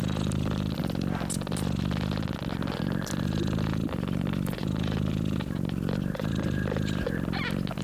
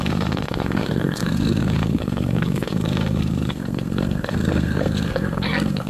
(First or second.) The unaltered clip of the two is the first